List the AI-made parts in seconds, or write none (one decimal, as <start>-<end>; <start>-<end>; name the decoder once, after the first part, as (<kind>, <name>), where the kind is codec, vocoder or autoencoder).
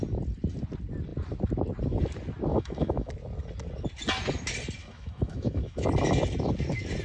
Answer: 2.5-3.1 (autoencoder, DAC-VAE); 4.8-5.9